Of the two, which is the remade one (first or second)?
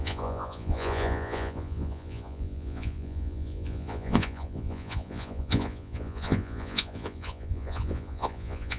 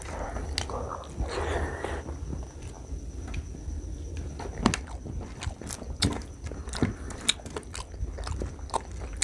first